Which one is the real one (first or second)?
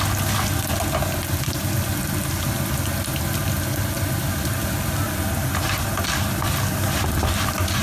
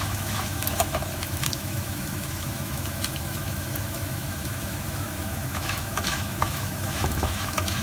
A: first